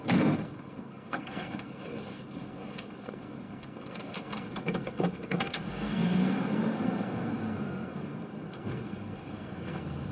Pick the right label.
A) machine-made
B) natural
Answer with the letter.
A